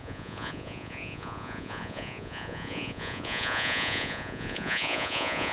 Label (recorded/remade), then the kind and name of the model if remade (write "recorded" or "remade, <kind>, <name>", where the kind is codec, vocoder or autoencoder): remade, vocoder, Vocos